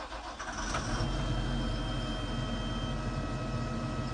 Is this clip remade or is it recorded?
recorded